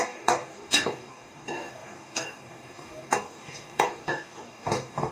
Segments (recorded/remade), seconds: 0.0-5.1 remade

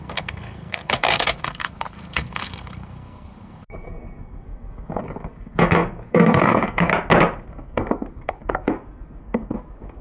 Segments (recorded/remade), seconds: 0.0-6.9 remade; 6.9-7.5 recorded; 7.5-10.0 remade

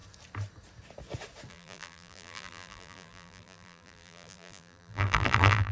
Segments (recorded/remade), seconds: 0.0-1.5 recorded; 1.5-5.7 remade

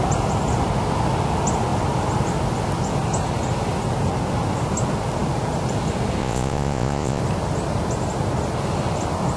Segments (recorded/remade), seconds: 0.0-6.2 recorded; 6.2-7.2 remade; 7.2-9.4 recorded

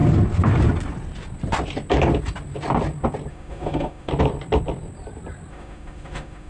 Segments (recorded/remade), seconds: 0.0-3.3 recorded; 3.3-4.1 remade; 4.1-5.5 recorded; 5.5-6.5 remade

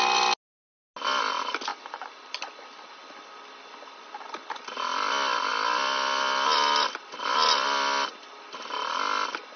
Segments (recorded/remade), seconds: 0.0-9.6 recorded

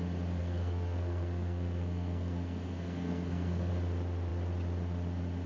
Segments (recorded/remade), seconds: 0.0-0.4 recorded; 0.4-3.7 remade; 3.7-5.5 recorded